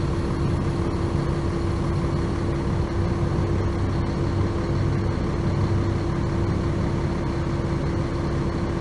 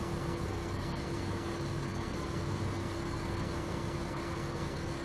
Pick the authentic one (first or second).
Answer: first